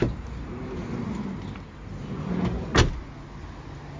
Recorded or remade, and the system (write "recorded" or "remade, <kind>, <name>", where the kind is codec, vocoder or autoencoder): recorded